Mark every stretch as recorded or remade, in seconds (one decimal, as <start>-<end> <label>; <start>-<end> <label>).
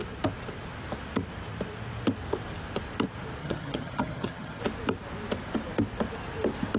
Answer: 0.0-3.4 recorded; 3.4-4.6 remade; 4.6-6.8 recorded